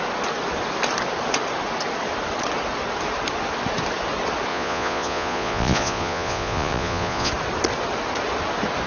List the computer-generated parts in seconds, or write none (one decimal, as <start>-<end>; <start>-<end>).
4.5-7.3